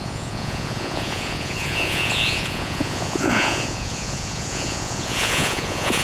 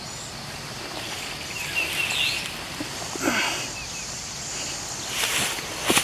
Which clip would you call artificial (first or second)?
first